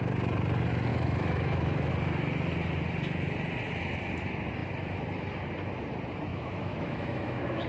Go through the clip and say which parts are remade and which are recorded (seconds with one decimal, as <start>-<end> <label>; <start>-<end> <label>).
0.0-0.9 recorded; 0.9-1.9 remade; 1.9-6.3 recorded; 6.3-7.7 remade